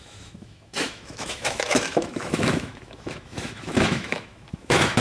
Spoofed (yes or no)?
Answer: yes